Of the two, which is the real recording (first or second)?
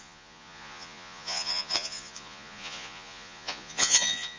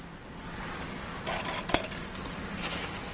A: second